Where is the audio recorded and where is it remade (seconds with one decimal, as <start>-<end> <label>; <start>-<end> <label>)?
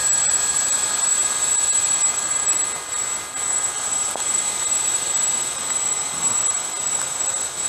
0.0-7.7 remade